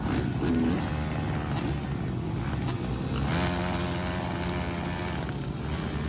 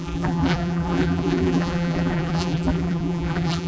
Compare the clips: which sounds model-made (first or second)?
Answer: second